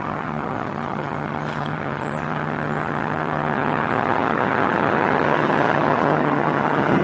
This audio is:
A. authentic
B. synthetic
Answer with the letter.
B